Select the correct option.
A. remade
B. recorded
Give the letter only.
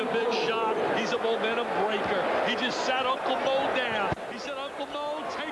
B